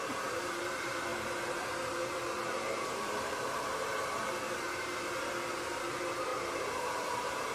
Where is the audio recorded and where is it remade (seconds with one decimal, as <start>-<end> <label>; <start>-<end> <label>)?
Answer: 0.0-6.3 remade; 6.3-6.8 recorded; 6.8-7.5 remade

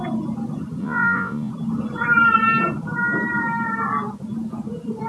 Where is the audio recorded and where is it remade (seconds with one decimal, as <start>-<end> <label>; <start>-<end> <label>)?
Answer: 0.0-0.8 recorded; 0.8-1.5 remade; 1.5-5.1 recorded

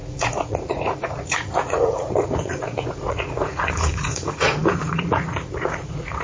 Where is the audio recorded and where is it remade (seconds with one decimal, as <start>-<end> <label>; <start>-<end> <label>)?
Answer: 0.0-6.2 remade